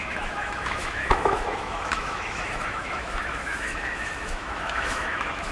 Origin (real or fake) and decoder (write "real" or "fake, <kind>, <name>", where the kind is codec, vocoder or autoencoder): fake, autoencoder, DAC-VAE